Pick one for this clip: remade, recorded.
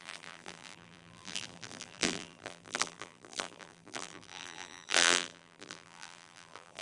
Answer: remade